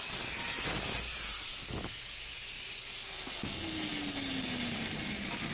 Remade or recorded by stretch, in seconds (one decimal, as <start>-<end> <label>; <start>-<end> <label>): 0.0-5.5 recorded